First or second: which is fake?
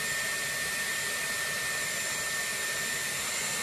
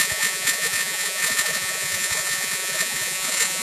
second